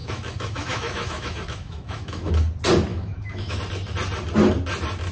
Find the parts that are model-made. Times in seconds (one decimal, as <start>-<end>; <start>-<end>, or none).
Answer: 0.0-2.3; 2.9-3.6